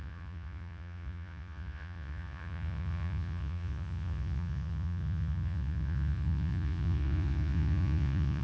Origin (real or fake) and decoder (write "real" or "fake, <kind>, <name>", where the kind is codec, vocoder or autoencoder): fake, vocoder, Vocos